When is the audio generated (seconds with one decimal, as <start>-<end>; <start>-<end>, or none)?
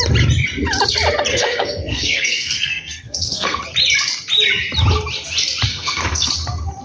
1.3-3.6; 5.7-6.3